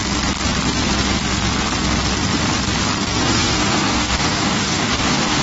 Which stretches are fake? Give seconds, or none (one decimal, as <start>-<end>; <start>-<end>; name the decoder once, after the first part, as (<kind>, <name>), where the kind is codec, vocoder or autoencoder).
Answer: 3.2-5.4 (codec, DAC)